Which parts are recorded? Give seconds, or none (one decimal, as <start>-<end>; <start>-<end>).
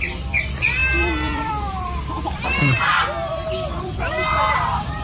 none